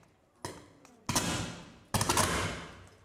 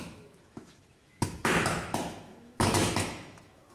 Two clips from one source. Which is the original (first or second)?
first